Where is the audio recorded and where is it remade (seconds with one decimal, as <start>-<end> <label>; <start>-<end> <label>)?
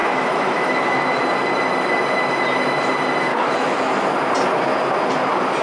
0.0-1.2 remade; 1.2-3.3 recorded; 3.3-3.8 remade; 3.8-5.6 recorded